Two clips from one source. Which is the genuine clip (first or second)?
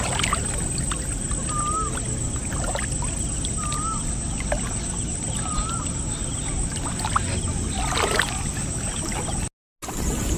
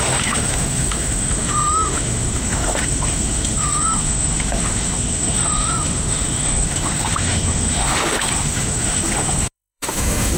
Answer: first